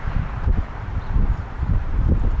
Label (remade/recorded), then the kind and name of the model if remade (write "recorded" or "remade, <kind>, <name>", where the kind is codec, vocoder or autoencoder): remade, vocoder, BigVGAN v2